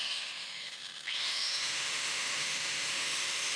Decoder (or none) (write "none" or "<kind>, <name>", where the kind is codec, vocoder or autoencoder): autoencoder, DAC-VAE